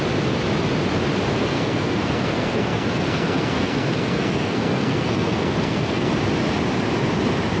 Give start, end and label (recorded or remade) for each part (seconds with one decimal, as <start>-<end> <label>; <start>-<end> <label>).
0.0-1.5 recorded; 1.5-6.1 remade; 6.1-7.6 recorded

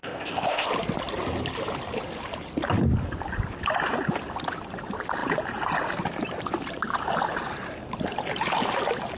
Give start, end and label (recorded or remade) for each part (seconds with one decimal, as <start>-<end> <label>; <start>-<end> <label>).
0.0-0.7 remade; 0.7-9.2 recorded

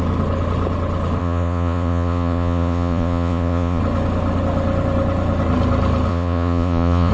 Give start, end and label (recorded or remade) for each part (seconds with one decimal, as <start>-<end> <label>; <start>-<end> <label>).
0.0-1.2 recorded; 1.2-3.8 remade; 3.8-6.1 recorded; 6.1-7.1 remade

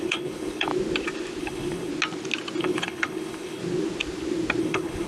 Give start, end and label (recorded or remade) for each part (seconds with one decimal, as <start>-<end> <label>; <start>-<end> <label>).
0.0-0.7 remade; 0.7-1.4 recorded; 1.4-1.9 remade; 1.9-2.6 recorded; 2.6-3.6 remade; 3.6-4.6 recorded; 4.6-5.1 remade

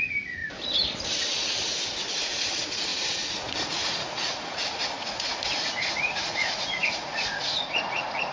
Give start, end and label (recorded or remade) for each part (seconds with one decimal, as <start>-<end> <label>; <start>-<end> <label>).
0.0-0.4 remade; 0.4-2.1 recorded; 2.1-8.3 remade

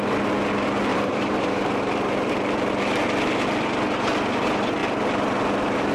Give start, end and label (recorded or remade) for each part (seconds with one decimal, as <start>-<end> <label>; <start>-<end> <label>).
0.0-0.9 recorded; 0.9-2.7 remade; 2.7-5.9 recorded

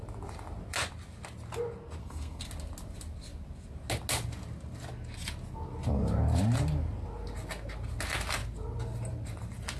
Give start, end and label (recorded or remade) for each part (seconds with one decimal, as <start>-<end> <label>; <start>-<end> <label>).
0.0-2.0 recorded; 2.0-2.5 remade; 2.5-9.8 recorded